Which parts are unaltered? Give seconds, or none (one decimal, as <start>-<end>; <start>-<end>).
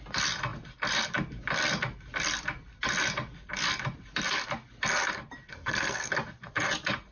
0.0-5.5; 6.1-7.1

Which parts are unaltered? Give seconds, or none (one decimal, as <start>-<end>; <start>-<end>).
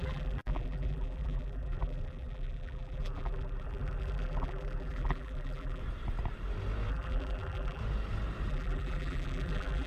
5.8-6.9; 7.8-8.5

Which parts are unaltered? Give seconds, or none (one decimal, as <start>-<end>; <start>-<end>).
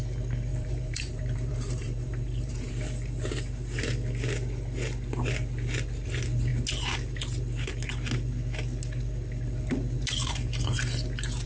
0.0-0.5; 2.7-11.5